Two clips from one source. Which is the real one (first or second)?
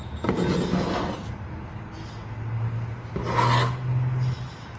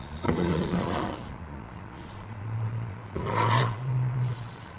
first